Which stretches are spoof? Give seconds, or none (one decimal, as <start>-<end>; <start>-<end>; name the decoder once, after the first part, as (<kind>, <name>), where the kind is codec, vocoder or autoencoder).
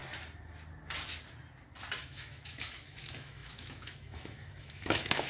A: 2.0-5.3 (autoencoder, DAC-VAE)